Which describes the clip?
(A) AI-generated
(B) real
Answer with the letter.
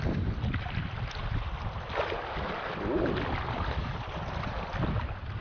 B